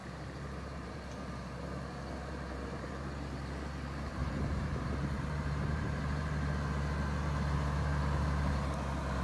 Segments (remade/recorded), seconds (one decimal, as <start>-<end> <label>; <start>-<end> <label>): 0.0-2.9 remade; 2.9-4.2 recorded; 4.2-6.5 remade; 6.5-9.2 recorded